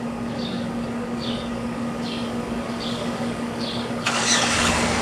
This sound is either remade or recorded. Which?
remade